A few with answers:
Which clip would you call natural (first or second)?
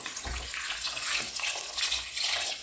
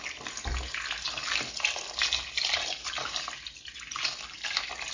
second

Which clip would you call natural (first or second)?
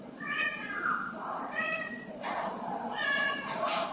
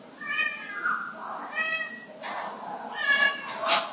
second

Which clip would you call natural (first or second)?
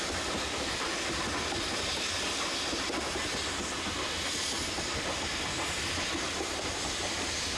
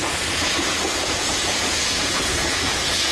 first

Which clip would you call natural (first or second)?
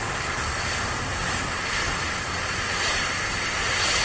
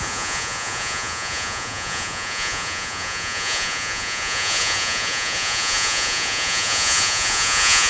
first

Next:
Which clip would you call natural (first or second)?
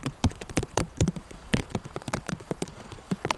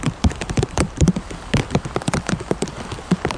second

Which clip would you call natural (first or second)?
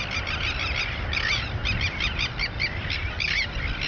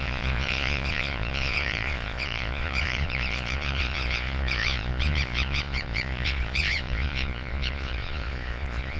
first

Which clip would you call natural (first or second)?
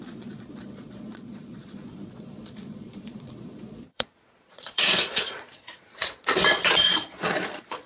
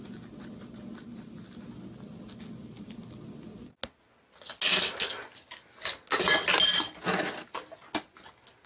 second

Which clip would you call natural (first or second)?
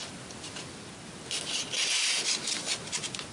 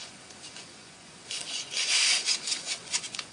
first